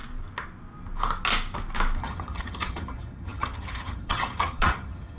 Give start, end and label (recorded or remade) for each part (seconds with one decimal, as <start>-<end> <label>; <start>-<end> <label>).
0.0-2.0 recorded; 2.0-5.2 remade